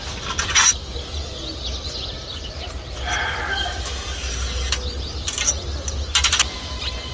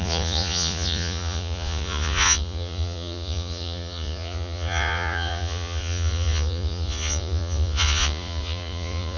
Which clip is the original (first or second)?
first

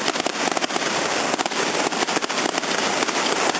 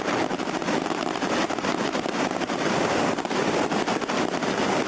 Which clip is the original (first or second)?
first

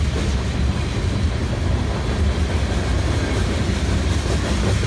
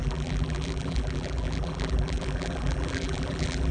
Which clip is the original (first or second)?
first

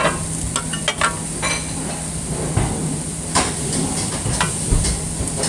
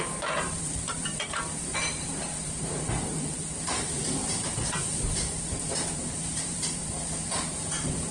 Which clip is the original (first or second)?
first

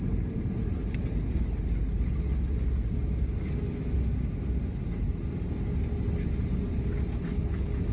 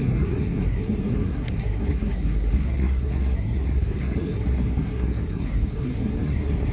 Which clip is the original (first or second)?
first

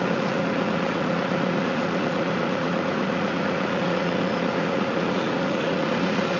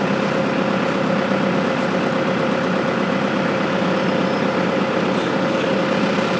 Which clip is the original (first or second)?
second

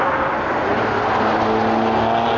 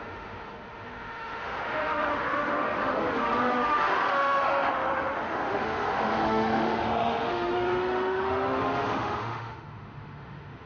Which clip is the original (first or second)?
first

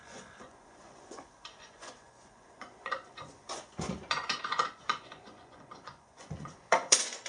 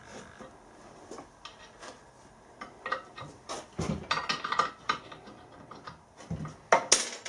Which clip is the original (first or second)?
second